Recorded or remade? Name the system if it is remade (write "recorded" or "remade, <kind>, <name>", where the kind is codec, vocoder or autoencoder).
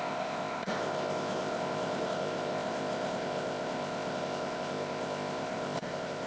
remade, codec, ZipCodec